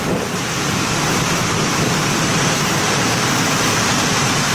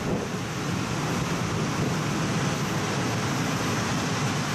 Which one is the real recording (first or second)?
second